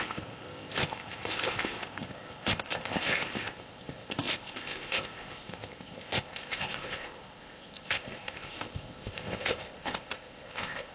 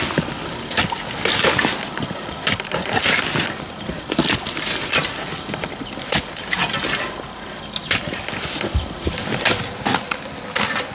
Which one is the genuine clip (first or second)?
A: second